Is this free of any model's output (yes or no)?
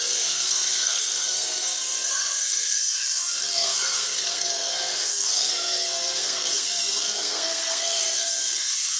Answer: no